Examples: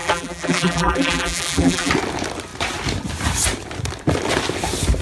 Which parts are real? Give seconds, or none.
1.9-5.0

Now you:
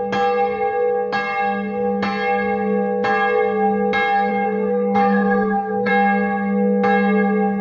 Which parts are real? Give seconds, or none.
0.0-4.3; 5.9-7.6

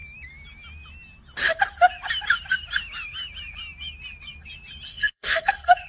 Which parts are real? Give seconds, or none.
0.0-4.9

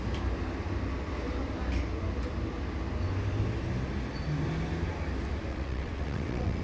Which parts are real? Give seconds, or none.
0.0-5.5

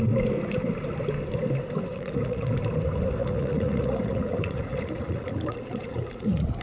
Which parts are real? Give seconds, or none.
0.0-1.9; 2.5-3.2

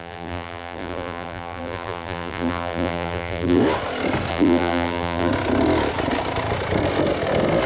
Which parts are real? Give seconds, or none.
3.6-4.3; 5.3-7.7

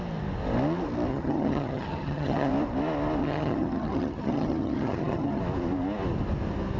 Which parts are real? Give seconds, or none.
0.0-1.1; 2.5-3.2; 5.4-6.8